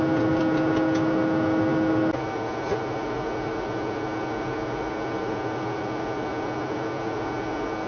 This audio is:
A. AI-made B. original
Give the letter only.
B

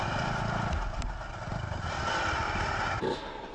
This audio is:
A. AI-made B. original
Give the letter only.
B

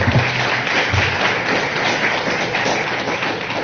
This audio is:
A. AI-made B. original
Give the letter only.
B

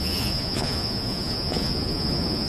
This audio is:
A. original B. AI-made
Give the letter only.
B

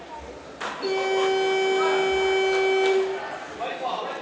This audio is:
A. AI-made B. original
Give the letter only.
B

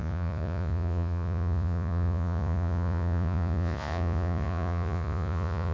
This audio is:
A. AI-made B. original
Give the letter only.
A